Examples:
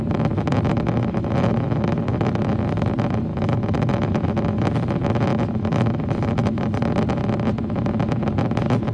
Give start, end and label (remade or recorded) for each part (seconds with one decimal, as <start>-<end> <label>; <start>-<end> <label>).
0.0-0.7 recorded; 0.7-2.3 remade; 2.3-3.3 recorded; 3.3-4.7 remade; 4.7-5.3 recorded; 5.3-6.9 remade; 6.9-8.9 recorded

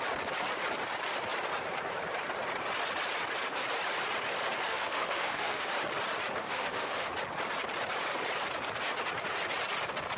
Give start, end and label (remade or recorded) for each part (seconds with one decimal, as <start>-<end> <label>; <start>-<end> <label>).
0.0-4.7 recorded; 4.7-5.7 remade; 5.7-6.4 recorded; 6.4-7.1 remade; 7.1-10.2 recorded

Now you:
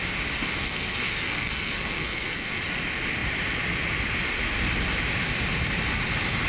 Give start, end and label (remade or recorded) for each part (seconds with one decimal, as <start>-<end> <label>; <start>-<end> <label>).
0.0-0.6 recorded; 0.6-2.6 remade; 2.6-6.5 recorded

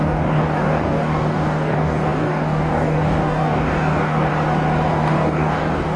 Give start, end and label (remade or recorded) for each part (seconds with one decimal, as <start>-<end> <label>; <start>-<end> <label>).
0.0-4.3 remade; 4.3-4.9 recorded; 4.9-6.0 remade

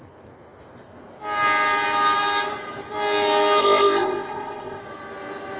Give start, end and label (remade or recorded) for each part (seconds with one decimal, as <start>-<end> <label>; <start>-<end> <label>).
0.0-3.6 recorded; 3.6-4.8 remade; 4.8-5.6 recorded

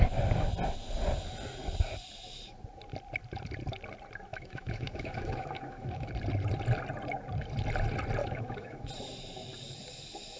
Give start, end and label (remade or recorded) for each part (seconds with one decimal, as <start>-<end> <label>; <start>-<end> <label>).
0.0-4.3 recorded; 4.3-6.1 remade; 6.1-8.2 recorded; 8.2-8.9 remade; 8.9-10.4 recorded